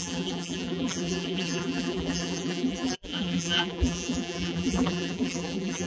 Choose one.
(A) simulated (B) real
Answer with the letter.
A